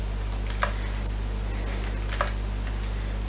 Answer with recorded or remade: recorded